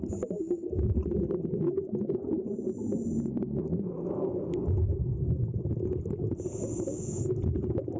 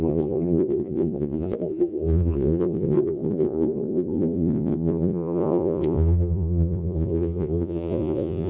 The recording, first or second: first